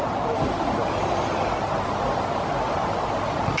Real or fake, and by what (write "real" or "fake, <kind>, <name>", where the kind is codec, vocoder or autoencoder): real